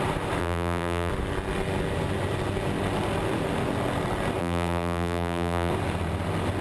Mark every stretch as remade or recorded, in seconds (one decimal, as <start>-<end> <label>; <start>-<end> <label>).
0.0-0.4 recorded; 0.4-1.1 remade; 1.1-4.4 recorded; 4.4-5.7 remade; 5.7-6.6 recorded